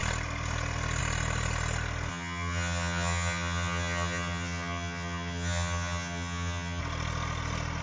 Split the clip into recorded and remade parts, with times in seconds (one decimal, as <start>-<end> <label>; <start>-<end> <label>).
0.0-2.1 recorded; 2.1-6.8 remade; 6.8-7.8 recorded